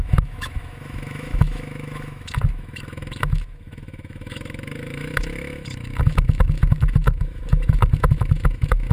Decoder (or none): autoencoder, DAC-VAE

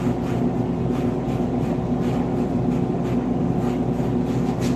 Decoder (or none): none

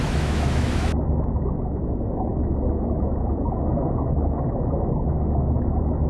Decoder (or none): autoencoder, DAC-VAE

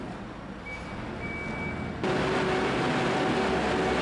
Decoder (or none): none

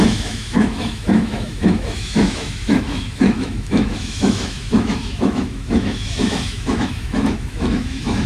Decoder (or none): autoencoder, DAC-VAE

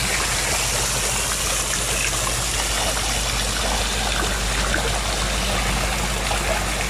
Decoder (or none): none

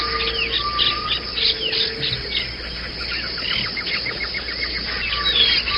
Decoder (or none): none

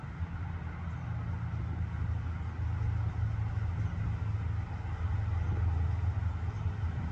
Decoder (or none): none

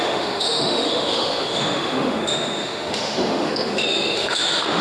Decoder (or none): autoencoder, DAC-VAE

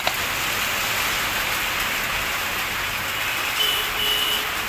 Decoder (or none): none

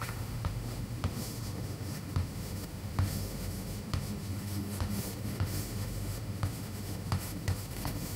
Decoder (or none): autoencoder, DAC-VAE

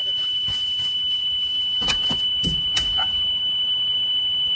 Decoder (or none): autoencoder, DAC-VAE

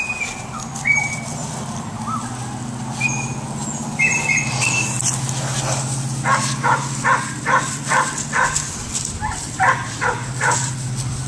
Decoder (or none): none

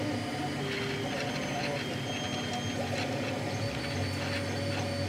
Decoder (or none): none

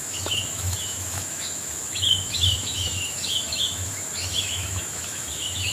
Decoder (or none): autoencoder, DAC-VAE